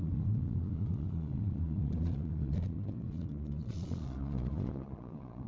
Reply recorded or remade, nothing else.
remade